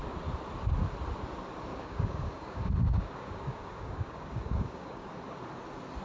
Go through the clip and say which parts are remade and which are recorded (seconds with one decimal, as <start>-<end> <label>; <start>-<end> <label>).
0.0-1.7 recorded; 1.7-5.1 remade; 5.1-6.0 recorded